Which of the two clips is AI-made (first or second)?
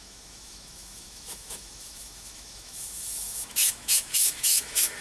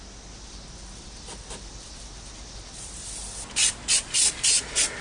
first